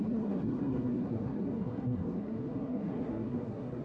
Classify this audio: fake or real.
fake